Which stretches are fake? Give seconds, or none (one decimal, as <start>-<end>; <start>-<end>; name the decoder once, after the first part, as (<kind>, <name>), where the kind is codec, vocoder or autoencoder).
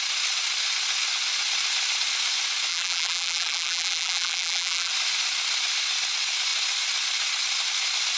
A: 2.7-4.9 (vocoder, BigVGAN v2)